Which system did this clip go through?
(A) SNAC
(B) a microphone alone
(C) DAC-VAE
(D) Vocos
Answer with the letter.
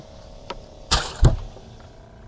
B